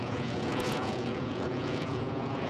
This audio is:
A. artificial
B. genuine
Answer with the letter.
A